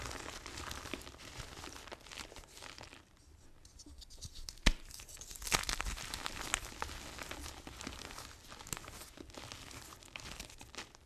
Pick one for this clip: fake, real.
real